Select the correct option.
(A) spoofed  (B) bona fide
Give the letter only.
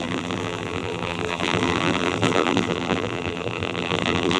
A